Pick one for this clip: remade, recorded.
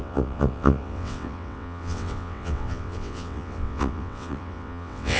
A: remade